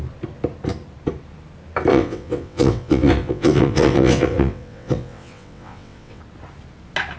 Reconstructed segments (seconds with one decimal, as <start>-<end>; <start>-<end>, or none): 1.9-6.2